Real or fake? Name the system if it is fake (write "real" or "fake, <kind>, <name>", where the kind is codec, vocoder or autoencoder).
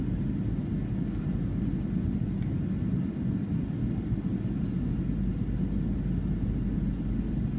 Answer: real